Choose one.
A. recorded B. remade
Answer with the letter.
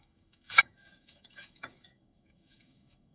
B